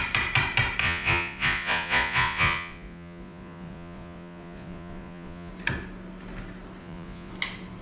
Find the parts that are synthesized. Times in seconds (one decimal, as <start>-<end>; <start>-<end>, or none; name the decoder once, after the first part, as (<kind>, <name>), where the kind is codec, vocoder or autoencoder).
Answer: 0.8-5.5 (vocoder, Vocos); 6.8-7.3